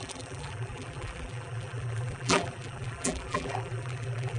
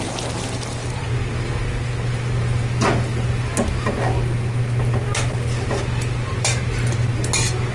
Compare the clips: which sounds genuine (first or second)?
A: second